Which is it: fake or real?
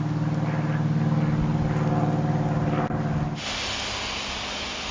real